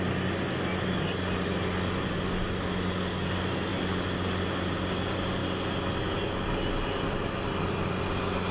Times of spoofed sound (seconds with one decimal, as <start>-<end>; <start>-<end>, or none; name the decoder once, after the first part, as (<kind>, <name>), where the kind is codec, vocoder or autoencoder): none